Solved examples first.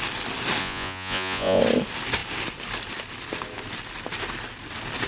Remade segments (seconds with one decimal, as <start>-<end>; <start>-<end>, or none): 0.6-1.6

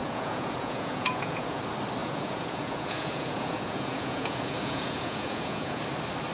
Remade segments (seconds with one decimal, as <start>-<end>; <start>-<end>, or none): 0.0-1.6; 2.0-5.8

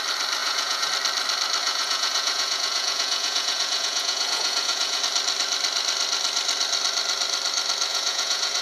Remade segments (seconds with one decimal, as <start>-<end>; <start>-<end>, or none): 0.4-0.9; 1.6-5.0; 7.9-8.6

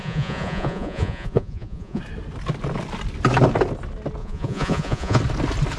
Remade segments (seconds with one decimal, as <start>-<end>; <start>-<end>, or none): 0.0-2.0; 4.2-5.2

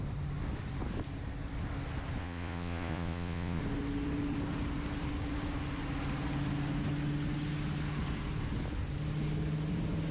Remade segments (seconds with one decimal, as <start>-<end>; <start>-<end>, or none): 2.2-3.6

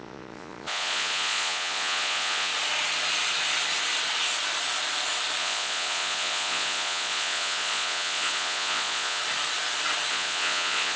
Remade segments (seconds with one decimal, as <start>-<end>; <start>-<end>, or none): 0.0-2.5; 5.4-9.2; 10.1-11.0

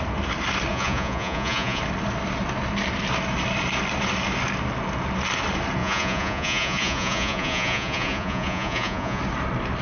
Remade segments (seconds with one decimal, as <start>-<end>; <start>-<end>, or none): 0.7-1.8; 5.8-9.2

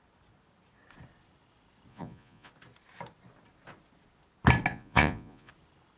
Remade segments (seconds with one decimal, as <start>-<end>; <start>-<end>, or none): 1.9-2.5; 4.7-5.5